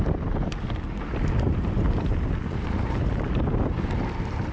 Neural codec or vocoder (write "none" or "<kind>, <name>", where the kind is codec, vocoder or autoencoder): none